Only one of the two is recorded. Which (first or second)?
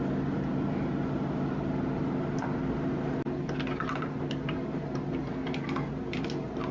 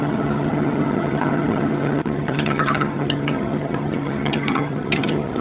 first